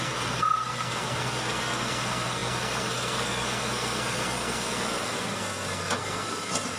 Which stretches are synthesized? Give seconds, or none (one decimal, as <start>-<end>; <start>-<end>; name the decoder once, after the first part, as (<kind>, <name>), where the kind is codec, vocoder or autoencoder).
0.0-6.8 (codec, SNAC)